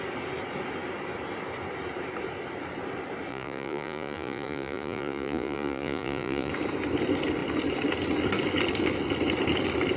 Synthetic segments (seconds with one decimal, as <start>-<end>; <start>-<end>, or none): 3.3-6.5